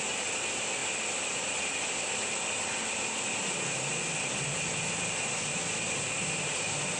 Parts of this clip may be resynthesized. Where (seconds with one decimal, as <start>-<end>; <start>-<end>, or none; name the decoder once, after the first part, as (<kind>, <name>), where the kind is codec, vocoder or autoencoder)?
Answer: none